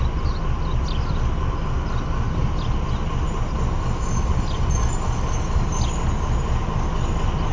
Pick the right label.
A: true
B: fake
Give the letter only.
A